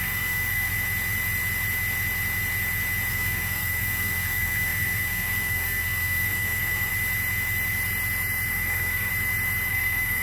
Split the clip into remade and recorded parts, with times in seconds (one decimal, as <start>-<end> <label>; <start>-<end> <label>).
0.0-0.7 remade; 0.7-3.1 recorded; 3.1-6.9 remade; 6.9-8.5 recorded; 8.5-9.1 remade; 9.1-9.7 recorded; 9.7-10.2 remade

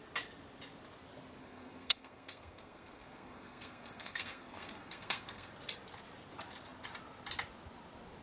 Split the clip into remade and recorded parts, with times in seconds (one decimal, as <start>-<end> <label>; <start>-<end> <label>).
0.0-1.4 recorded; 1.4-5.5 remade; 5.5-8.2 recorded

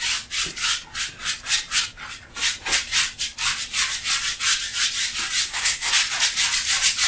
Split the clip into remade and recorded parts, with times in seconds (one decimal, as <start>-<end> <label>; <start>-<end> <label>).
0.0-5.4 recorded; 5.4-5.9 remade; 5.9-7.1 recorded